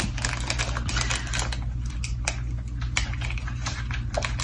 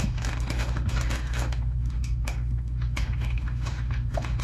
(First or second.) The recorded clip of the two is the first